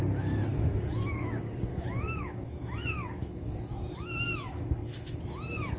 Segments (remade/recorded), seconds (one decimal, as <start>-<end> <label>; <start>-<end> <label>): 0.0-0.5 recorded; 0.5-1.1 remade; 1.1-1.7 recorded; 1.7-5.2 remade; 5.2-5.8 recorded